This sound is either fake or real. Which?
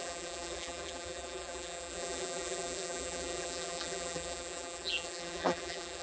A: fake